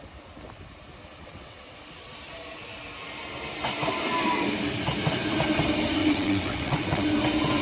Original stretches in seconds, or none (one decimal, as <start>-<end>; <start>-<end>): 0.0-1.2; 1.8-6.0; 7.1-7.6